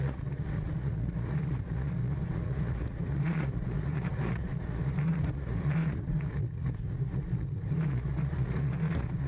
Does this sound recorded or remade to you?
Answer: remade